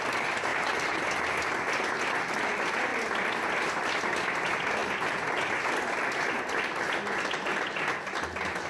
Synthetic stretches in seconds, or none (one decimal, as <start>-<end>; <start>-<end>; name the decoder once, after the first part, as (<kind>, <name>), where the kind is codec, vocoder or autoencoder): 0.0-0.5 (vocoder, BigVGAN v2); 2.0-2.9; 4.0-4.8